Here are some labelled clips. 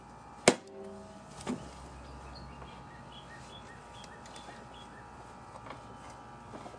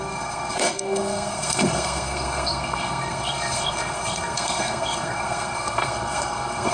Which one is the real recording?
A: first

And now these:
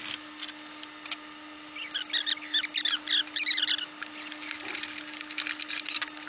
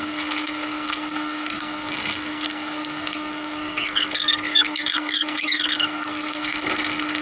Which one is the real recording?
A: first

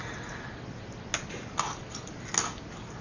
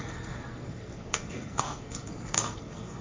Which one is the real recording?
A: first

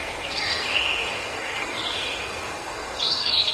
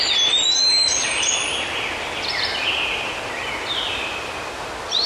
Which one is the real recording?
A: second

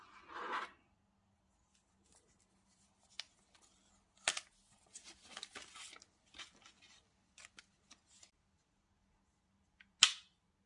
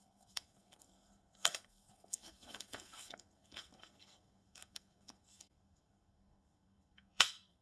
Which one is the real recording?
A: first